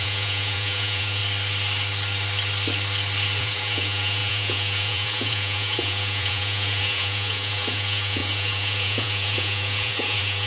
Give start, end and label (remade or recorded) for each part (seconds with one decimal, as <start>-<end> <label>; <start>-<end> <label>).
0.0-1.2 remade; 1.2-3.4 recorded; 3.4-10.5 remade